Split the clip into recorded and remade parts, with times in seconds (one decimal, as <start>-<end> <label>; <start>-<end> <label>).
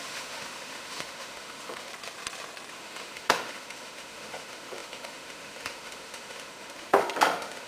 0.0-1.9 remade; 1.9-2.7 recorded; 2.7-7.7 remade